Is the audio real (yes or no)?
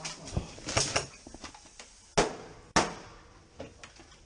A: yes